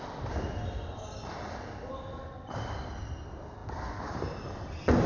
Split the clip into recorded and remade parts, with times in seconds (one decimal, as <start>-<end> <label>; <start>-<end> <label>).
0.0-5.1 recorded